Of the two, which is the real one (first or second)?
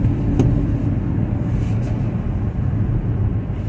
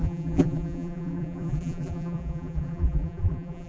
first